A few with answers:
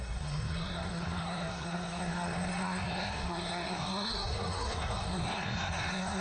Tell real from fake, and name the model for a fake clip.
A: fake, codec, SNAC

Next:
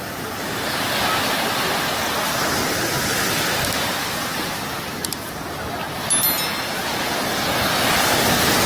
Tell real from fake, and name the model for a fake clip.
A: real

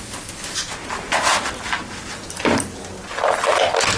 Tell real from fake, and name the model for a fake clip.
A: real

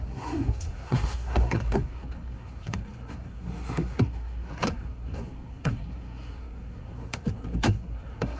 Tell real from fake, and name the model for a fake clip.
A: fake, codec, SNAC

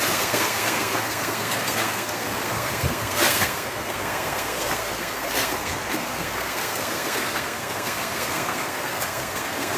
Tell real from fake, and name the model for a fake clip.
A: fake, codec, SNAC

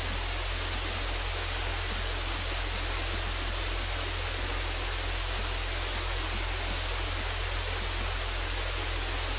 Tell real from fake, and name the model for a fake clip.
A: real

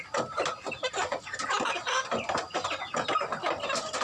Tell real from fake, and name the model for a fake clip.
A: real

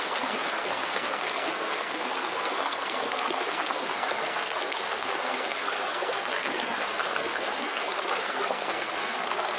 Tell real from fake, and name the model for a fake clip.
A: fake, codec, SNAC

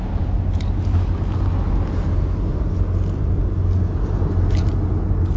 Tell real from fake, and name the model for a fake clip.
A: real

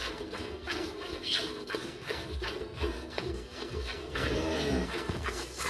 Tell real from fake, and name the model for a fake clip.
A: fake, codec, SNAC